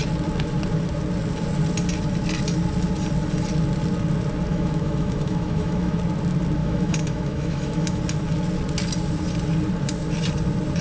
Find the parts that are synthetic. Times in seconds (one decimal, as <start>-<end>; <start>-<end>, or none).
4.5-6.0; 6.6-8.0